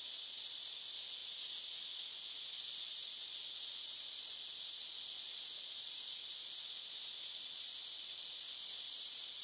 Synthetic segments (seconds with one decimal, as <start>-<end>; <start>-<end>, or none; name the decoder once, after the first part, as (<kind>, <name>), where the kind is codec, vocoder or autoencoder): none